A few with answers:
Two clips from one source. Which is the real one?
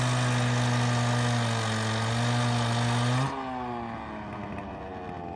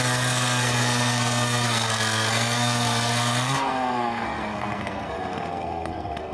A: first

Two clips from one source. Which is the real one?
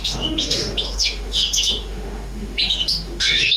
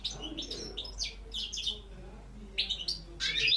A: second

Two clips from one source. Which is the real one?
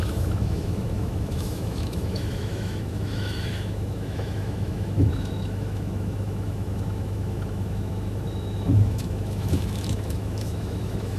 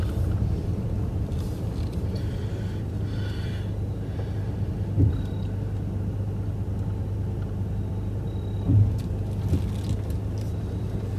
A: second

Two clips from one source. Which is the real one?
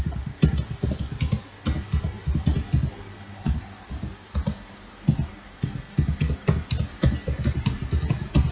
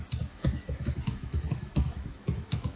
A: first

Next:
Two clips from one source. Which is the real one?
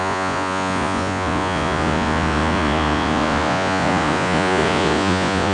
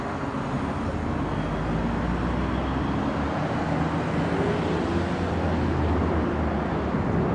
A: second